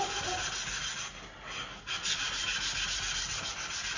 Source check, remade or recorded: recorded